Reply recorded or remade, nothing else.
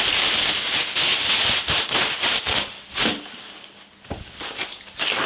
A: recorded